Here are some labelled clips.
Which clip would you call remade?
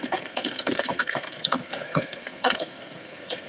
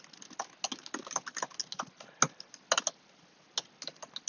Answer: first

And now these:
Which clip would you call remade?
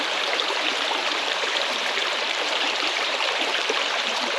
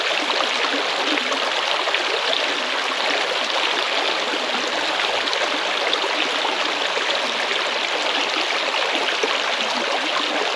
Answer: first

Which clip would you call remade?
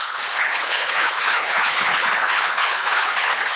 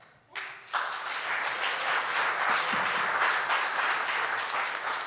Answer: first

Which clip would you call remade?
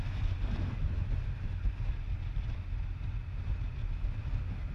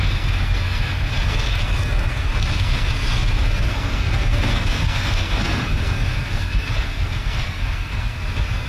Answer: second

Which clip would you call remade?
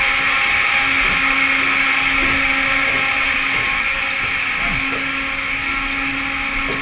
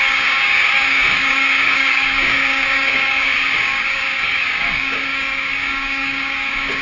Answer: second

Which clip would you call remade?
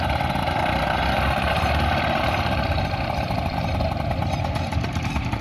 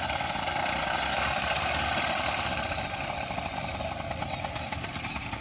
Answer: first